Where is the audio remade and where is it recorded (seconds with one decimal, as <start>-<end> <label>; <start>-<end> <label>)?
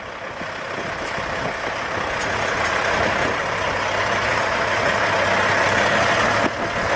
0.0-2.2 recorded; 2.2-3.4 remade; 3.4-4.2 recorded; 4.2-5.0 remade; 5.0-7.0 recorded